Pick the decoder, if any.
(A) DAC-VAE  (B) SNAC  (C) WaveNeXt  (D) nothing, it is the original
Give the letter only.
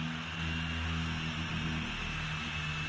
D